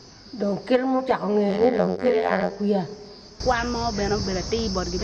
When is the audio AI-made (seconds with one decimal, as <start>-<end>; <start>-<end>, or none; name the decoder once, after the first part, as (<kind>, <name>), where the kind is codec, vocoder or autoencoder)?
1.5-2.5 (vocoder, BigVGAN v2)